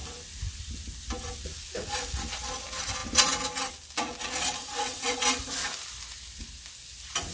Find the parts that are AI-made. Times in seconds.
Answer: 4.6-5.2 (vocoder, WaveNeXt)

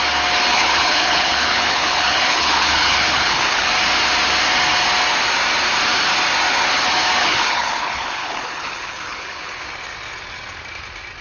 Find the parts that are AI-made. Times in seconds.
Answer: 0.5-3.7 (codec, HILCodec); 7.2-9.6

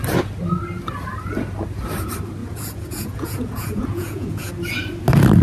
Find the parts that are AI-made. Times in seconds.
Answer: 2.4-4.5 (vocoder, Vocos)

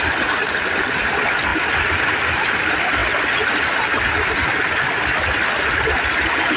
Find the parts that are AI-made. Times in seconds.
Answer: none

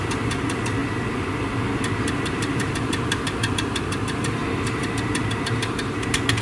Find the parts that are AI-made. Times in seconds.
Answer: 0.0-0.8 (vocoder, BigVGAN v2); 2.1-4.4

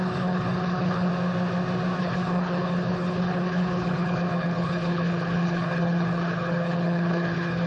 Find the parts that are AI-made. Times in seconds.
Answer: 0.0-1.1 (codec, HILCodec); 2.0-7.7

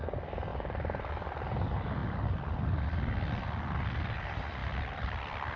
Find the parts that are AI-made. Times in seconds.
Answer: 0.5-1.1 (vocoder, BigVGAN v2); 2.0-3.7; 4.6-5.6

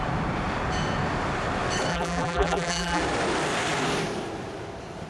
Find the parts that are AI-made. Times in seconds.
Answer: 1.9-3.0 (vocoder, BigVGAN v2)